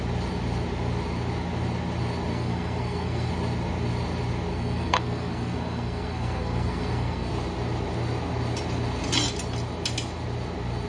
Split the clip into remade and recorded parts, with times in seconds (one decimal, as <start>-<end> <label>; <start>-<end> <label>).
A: 0.0-2.3 recorded; 2.3-3.3 remade; 3.3-4.5 recorded; 4.5-7.3 remade; 7.3-10.9 recorded